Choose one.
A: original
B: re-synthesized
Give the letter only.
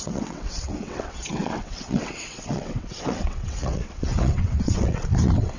B